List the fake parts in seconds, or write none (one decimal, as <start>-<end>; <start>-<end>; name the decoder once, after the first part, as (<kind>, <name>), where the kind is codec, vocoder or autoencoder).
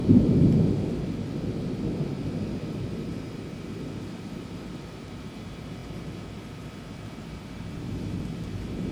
2.5-8.9 (vocoder, BigVGAN v2)